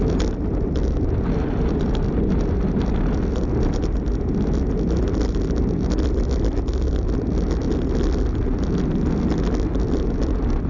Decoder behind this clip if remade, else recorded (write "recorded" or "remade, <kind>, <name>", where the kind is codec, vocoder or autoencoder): recorded